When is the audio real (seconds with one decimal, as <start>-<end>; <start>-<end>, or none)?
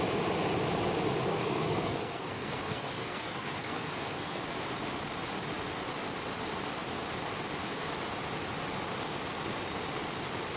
0.0-1.3; 4.4-10.6